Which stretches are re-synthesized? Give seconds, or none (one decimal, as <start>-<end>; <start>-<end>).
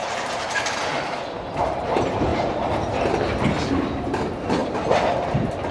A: 0.0-0.8; 4.6-5.7